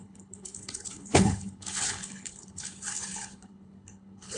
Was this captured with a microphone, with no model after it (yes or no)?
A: no